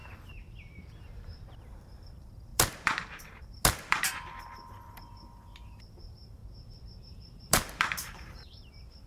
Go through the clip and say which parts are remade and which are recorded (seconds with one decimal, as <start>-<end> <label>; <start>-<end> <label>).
0.0-1.0 recorded; 1.0-6.4 remade; 6.4-7.0 recorded; 7.0-9.1 remade